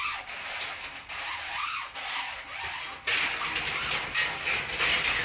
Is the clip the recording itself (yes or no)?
yes